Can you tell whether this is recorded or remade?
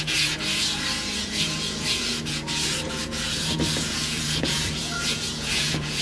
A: remade